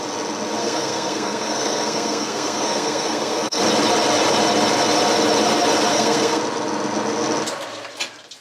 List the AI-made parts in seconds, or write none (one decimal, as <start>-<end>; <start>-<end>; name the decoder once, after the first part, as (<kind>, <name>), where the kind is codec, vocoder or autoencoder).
0.6-3.6 (codec, SNAC); 5.9-6.4